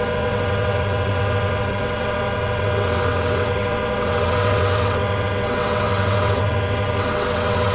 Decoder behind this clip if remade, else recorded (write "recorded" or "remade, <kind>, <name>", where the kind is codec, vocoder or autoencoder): remade, vocoder, WaveNeXt